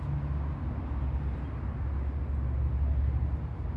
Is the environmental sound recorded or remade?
recorded